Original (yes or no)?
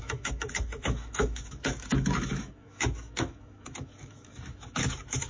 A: no